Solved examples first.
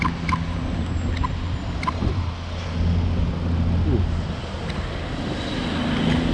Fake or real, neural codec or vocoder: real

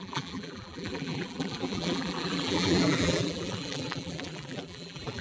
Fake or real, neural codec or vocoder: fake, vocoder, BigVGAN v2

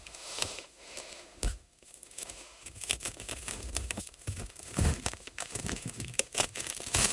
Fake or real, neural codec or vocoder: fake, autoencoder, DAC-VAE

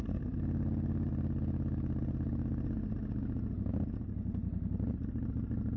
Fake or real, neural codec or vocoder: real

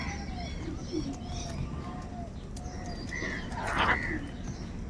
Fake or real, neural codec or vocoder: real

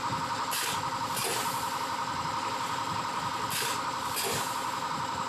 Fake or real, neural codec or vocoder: real